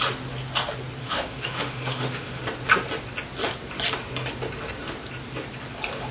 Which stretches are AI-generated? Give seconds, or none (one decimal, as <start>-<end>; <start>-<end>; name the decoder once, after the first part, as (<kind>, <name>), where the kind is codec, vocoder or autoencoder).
1.0-2.4 (autoencoder, DAC-VAE)